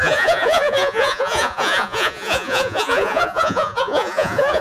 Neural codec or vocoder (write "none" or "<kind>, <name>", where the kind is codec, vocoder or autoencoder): vocoder, Vocos